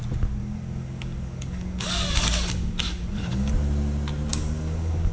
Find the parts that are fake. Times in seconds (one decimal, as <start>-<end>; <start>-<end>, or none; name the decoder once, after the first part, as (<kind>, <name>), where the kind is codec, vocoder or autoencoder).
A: 0.4-3.5 (codec, DAC); 4.3-5.1